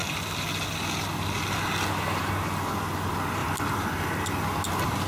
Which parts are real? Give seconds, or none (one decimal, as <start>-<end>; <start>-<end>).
0.0-3.4; 3.9-5.1

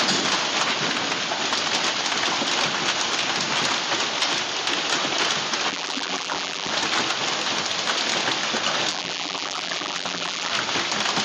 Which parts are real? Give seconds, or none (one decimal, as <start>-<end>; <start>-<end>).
0.0-5.7; 6.7-8.9; 10.5-11.2

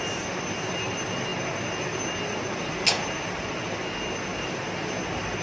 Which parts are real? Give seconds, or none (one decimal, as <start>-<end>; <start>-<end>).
0.0-5.4

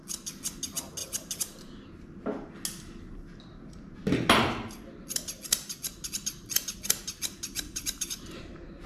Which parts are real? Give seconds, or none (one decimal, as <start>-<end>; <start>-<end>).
0.0-1.0; 2.5-8.9

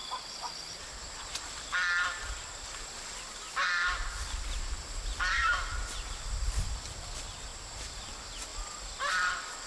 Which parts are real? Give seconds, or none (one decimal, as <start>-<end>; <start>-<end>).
0.0-9.7